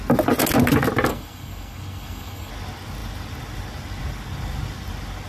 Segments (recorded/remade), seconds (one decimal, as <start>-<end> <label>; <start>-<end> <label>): 0.0-1.1 recorded; 1.1-2.5 remade; 2.5-5.3 recorded